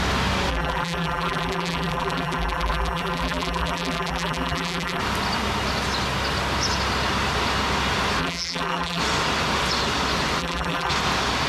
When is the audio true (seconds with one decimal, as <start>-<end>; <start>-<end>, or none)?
0.0-0.5; 5.0-8.2; 9.0-10.4; 10.9-11.5